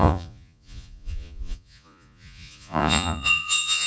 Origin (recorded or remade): remade